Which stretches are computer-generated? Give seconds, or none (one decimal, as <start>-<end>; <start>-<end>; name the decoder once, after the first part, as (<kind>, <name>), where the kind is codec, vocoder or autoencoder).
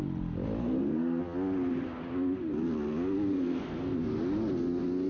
0.6-1.2 (codec, SNAC); 3.3-4.1